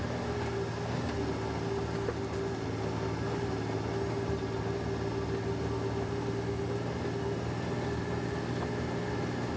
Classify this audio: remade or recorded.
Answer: recorded